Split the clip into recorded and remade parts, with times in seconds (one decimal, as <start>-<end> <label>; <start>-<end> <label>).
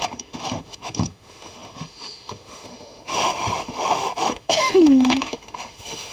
0.0-6.1 remade